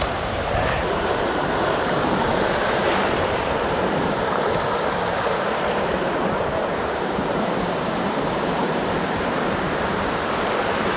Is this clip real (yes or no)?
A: no